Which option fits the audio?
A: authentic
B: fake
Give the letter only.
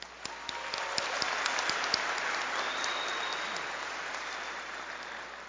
A